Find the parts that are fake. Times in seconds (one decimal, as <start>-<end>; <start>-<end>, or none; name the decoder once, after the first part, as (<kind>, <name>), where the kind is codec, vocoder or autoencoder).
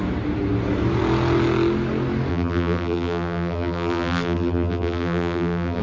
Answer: 2.3-5.8 (vocoder, BigVGAN v2)